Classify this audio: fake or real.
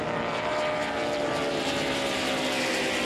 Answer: real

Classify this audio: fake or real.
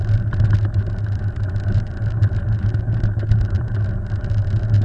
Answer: real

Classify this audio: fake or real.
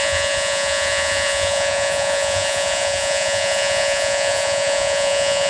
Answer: fake